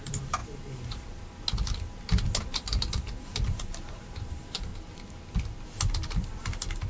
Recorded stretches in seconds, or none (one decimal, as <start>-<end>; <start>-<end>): 0.4-2.4; 4.7-6.9